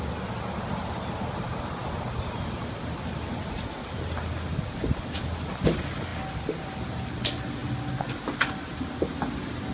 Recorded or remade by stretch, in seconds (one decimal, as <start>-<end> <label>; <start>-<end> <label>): 0.0-9.7 recorded